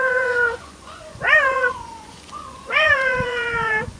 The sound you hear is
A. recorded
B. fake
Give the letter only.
B